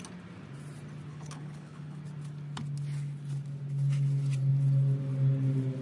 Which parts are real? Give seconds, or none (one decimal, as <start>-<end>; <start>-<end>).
0.0-1.1; 2.0-5.8